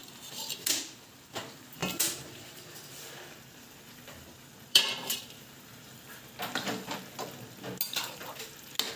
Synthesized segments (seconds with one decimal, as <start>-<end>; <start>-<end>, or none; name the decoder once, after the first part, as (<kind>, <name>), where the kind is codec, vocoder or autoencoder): 1.8-6.3 (vocoder, BigVGAN v2)